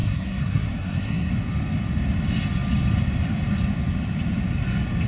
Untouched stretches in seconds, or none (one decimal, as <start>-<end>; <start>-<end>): 1.3-5.1

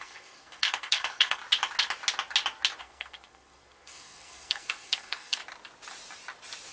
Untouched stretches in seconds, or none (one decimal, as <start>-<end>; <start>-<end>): 1.4-2.8; 5.4-6.7

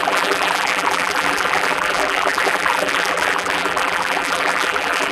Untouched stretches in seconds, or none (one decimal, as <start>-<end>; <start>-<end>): none

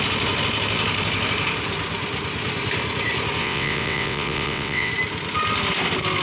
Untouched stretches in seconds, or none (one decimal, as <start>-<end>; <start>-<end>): 0.0-3.4; 4.9-6.2